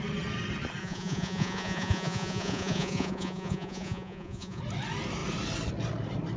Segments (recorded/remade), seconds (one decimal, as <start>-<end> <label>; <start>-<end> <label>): 0.0-0.8 recorded; 0.8-4.6 remade; 4.6-6.4 recorded